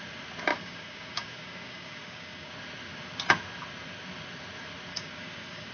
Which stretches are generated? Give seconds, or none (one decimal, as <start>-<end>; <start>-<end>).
0.5-2.5; 4.9-5.7